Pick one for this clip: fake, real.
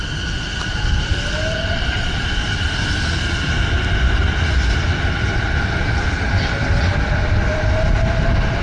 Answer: real